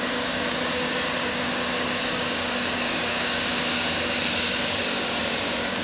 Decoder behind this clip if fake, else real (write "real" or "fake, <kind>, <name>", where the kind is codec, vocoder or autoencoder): fake, codec, DAC